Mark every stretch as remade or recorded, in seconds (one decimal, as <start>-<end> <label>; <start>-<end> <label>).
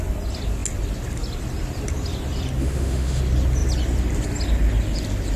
0.0-2.6 recorded; 2.6-3.2 remade; 3.2-5.4 recorded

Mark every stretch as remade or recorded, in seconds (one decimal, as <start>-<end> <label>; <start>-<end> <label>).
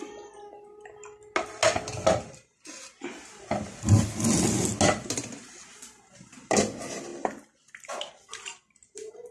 0.0-9.3 recorded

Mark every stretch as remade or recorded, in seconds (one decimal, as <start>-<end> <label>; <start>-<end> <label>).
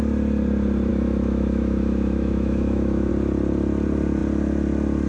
0.0-0.9 recorded; 0.9-3.1 remade; 3.1-5.1 recorded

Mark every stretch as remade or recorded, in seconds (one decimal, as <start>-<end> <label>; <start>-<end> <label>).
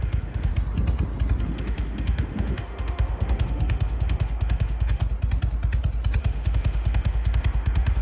0.0-0.5 remade; 0.5-1.4 recorded; 1.4-5.0 remade; 5.0-6.2 recorded; 6.2-8.0 remade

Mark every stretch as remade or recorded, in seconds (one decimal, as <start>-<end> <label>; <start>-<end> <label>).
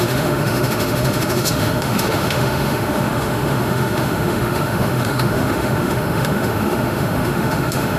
0.0-8.0 remade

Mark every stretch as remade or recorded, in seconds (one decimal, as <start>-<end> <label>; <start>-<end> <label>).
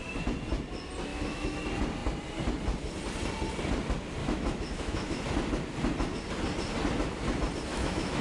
0.0-1.1 recorded; 1.1-1.6 remade; 1.6-4.2 recorded; 4.2-5.2 remade; 5.2-7.7 recorded; 7.7-8.2 remade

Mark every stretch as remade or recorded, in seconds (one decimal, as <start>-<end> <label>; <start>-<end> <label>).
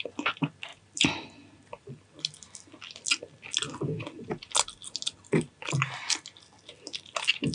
0.0-7.5 recorded